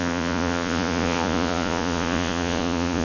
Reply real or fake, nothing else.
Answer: fake